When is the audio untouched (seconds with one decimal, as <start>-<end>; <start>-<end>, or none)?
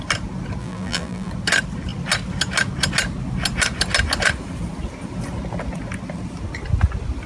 0.0-0.6; 1.3-7.3